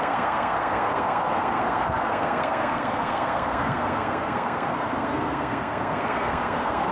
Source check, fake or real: fake